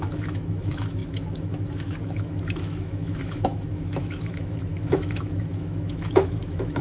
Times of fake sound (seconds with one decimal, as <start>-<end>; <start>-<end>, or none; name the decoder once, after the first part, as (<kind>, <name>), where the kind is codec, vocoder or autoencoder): 0.0-6.8 (autoencoder, DAC-VAE)